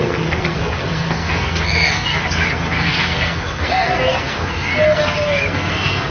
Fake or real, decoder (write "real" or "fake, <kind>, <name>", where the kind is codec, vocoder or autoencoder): fake, codec, SNAC